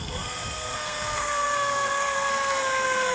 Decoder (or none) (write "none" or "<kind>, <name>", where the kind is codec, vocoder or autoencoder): codec, SNAC